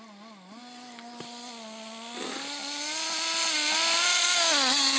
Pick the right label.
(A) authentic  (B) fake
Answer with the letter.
A